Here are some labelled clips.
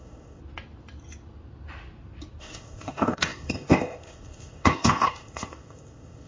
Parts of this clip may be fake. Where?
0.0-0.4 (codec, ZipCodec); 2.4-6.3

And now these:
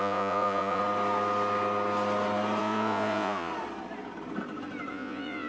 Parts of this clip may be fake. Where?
0.0-0.8 (vocoder, Vocos); 2.6-3.5; 4.9-5.5